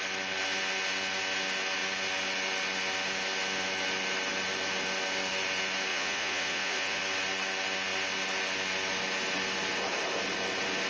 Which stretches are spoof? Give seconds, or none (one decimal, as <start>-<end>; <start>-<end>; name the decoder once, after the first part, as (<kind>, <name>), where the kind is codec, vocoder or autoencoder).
5.9-7.0 (vocoder, Vocos)